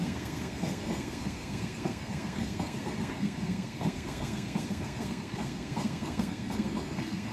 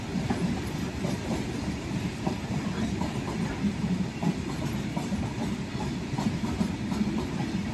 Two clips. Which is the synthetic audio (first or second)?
first